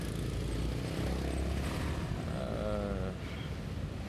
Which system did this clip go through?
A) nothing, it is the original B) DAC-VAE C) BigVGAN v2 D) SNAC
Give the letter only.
A